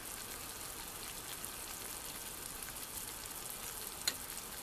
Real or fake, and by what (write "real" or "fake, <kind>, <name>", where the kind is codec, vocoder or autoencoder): real